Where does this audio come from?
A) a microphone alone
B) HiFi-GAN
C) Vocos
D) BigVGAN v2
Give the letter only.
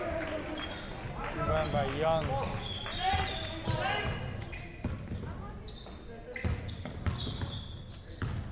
A